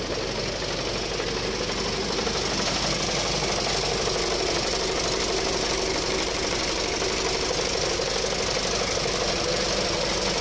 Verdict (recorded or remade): recorded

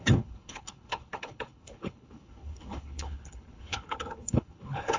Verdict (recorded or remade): remade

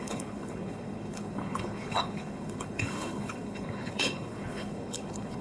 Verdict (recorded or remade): remade